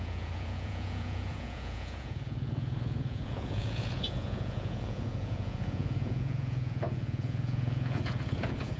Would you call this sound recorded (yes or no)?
no